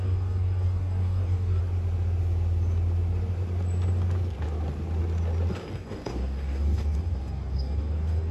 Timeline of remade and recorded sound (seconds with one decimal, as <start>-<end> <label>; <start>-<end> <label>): 0.0-1.6 remade; 1.6-5.5 recorded; 5.5-8.3 remade

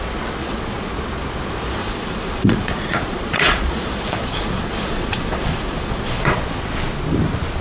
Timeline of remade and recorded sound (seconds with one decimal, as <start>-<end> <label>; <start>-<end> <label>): 0.0-0.4 recorded; 0.4-0.9 remade; 0.9-1.8 recorded; 1.8-6.4 remade; 6.4-7.6 recorded

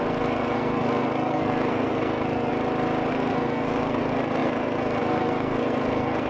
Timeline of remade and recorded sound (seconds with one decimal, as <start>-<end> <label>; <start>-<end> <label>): 0.0-2.5 remade; 2.5-3.1 recorded; 3.1-6.3 remade

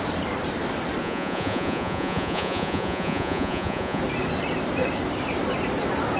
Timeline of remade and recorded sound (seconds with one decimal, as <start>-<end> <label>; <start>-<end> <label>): 0.0-1.0 recorded; 1.0-4.0 remade; 4.0-6.2 recorded

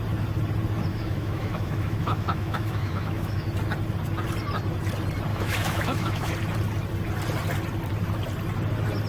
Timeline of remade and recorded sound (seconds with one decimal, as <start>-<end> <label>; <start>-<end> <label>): 0.0-0.9 recorded; 0.9-3.5 remade; 3.5-5.3 recorded; 5.3-6.3 remade; 6.3-9.1 recorded

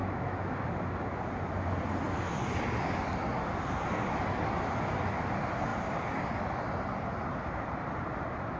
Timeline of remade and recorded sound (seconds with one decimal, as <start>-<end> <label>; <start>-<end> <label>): 0.0-1.2 remade; 1.2-8.6 recorded

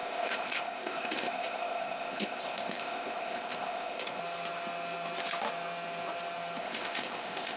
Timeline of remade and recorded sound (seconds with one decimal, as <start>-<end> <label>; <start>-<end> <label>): 0.0-4.2 remade; 4.2-6.6 recorded; 6.6-7.6 remade